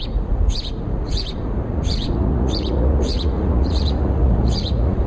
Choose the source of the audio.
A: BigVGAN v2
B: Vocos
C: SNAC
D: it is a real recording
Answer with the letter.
B